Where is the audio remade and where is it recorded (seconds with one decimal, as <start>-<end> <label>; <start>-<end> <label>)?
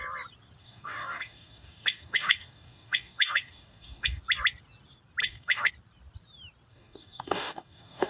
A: 0.0-0.6 recorded; 0.6-4.2 remade; 4.2-5.2 recorded; 5.2-5.7 remade; 5.7-6.7 recorded; 6.7-8.1 remade